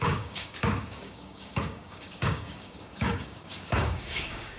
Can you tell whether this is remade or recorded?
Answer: remade